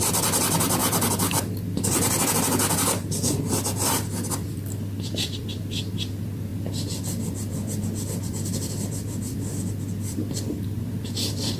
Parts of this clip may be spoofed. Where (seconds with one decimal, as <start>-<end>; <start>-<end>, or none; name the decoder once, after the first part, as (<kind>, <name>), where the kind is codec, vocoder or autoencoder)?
0.0-11.6 (vocoder, BigVGAN v2)